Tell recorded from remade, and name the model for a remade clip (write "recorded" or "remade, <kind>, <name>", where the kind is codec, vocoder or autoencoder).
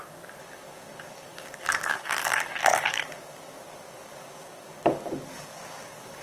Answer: remade, codec, DAC